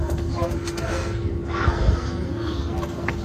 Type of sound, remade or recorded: remade